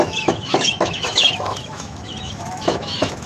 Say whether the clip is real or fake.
fake